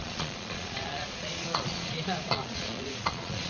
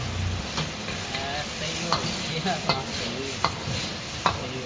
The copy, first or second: first